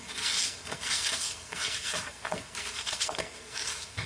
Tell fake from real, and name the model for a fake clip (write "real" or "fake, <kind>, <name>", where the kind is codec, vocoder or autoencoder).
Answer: fake, codec, SNAC